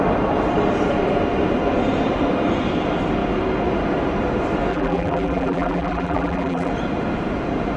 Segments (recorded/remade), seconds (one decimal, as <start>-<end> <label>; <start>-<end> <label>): 0.0-4.7 recorded; 4.7-6.7 remade; 6.7-7.8 recorded